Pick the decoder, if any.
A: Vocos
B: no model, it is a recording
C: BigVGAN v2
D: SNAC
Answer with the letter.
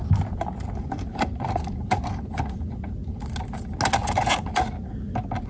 B